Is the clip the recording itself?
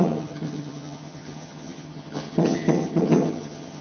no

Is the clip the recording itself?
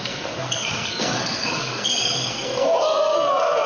no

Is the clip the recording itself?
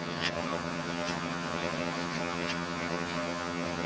no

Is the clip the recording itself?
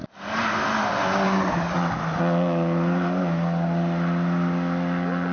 yes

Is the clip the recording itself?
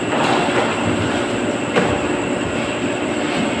yes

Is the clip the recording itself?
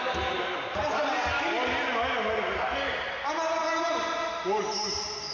yes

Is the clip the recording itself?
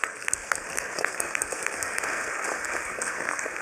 no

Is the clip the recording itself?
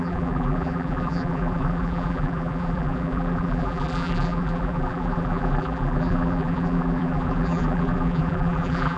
no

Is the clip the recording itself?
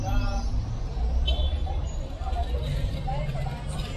yes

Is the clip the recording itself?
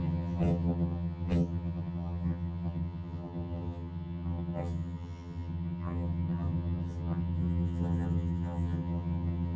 no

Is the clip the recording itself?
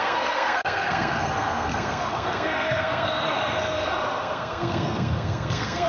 no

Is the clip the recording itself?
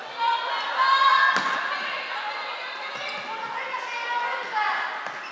yes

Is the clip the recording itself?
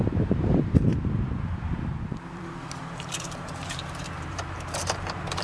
no